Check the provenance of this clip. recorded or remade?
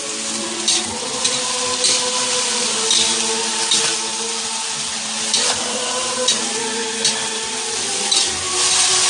remade